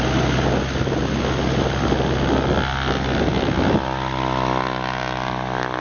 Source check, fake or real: real